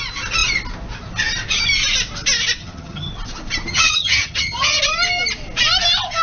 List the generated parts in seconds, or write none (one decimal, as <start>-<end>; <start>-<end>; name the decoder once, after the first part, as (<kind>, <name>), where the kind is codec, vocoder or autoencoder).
2.6-3.1 (vocoder, HiFi-GAN); 3.7-4.8